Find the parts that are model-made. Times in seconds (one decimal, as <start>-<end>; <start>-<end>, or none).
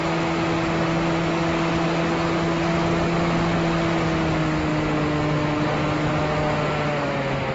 none